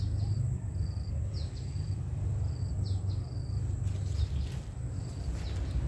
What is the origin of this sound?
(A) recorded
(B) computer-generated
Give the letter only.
A